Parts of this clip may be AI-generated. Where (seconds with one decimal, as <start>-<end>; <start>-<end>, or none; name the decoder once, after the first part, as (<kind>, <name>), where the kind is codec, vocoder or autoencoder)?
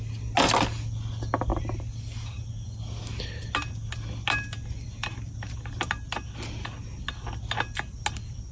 none